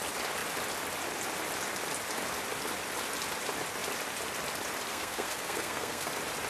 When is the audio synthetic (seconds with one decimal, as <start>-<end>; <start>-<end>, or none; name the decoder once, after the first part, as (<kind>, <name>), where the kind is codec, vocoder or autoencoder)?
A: 4.9-6.1 (codec, SNAC)